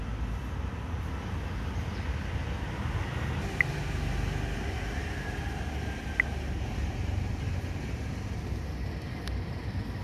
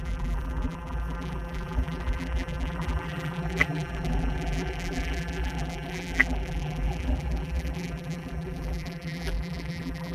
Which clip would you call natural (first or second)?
first